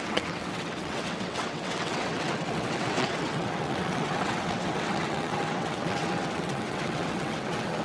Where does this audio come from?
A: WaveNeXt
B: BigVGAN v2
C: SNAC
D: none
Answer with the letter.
A